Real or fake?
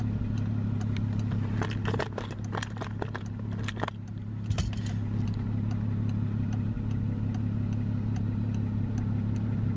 real